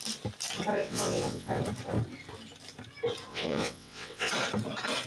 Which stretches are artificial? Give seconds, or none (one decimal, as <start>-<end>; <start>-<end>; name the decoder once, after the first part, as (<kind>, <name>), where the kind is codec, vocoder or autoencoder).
0.7-1.6 (vocoder, WaveNeXt); 3.3-4.3